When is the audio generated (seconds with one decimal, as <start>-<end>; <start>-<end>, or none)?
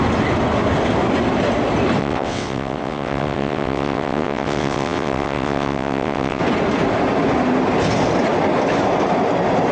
2.0-6.4